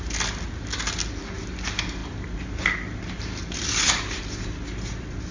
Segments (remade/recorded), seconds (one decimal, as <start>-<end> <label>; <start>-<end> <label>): 0.0-5.3 recorded